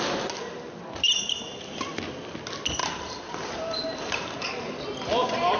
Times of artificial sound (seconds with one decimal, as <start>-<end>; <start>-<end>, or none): 2.8-4.8